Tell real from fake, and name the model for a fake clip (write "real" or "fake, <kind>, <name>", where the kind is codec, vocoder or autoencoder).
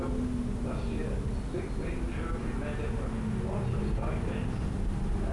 real